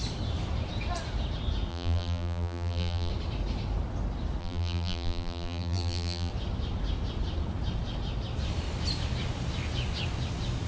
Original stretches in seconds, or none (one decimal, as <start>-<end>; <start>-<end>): 0.0-1.7; 3.1-4.4; 6.3-10.7